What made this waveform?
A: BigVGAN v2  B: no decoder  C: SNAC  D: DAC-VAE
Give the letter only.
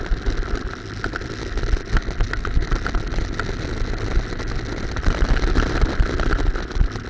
B